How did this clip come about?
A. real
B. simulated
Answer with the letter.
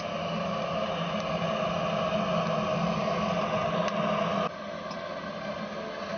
A